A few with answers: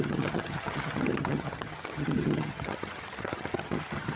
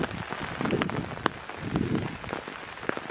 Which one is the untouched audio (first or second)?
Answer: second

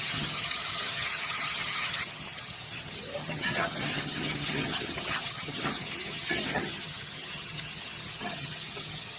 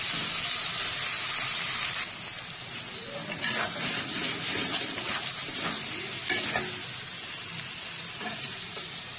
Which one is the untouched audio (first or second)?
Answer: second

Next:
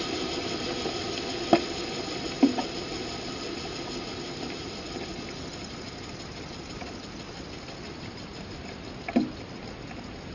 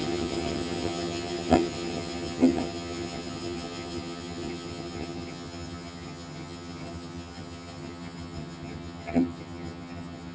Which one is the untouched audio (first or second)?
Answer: first